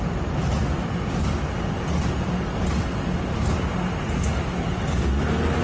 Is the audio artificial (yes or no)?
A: no